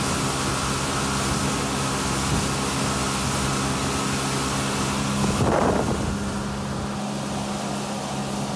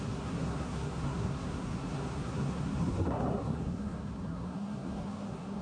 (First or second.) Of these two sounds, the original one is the first